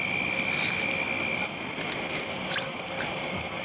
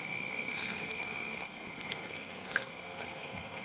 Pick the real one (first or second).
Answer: first